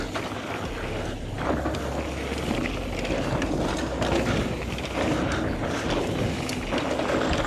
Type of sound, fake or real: real